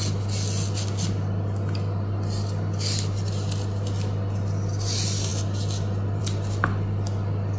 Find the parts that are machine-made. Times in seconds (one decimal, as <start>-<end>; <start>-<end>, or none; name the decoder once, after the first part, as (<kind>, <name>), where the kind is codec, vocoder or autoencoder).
none